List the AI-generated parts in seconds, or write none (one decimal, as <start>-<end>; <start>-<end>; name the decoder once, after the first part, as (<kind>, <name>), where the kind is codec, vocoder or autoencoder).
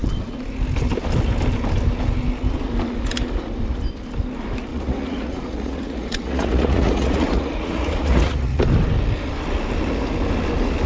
4.7-8.6 (vocoder, Vocos)